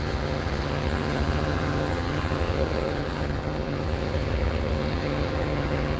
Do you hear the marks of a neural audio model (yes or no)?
yes